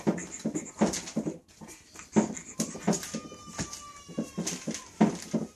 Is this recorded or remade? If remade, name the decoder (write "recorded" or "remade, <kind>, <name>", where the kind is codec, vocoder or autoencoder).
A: recorded